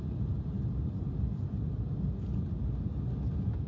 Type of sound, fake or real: real